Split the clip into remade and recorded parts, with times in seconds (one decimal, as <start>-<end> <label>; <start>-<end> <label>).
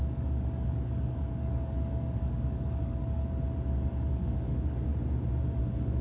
0.0-3.2 remade; 3.2-3.7 recorded; 3.7-4.9 remade; 4.9-5.6 recorded; 5.6-6.0 remade